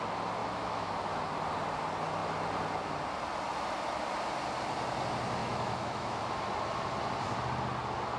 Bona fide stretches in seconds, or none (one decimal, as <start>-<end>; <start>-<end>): 0.0-0.4; 0.9-5.4; 6.2-8.2